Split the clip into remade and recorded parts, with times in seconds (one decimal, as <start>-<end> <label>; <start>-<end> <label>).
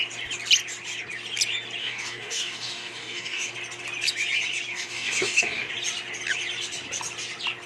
0.0-1.8 recorded; 1.8-3.5 remade; 3.5-4.7 recorded; 4.7-5.7 remade; 5.7-7.7 recorded